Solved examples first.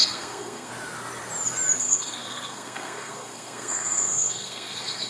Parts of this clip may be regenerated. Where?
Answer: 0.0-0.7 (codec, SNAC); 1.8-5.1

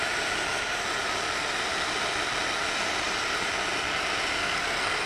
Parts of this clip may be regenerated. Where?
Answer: 4.4-5.1 (codec, SNAC)

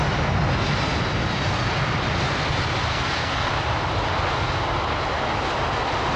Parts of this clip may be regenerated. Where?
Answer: 2.9-3.5 (codec, SNAC)

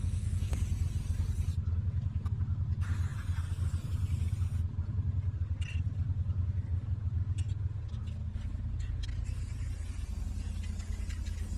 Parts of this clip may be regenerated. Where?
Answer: none

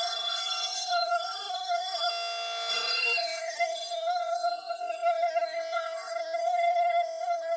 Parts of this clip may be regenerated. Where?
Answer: 0.0-2.1 (codec, SNAC); 2.7-7.6

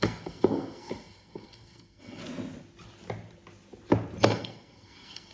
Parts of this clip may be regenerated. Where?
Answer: 0.0-2.2 (codec, SNAC); 4.2-5.3